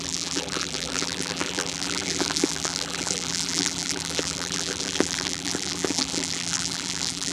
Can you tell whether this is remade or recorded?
remade